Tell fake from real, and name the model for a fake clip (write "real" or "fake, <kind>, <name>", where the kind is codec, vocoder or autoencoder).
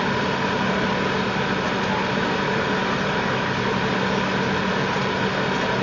real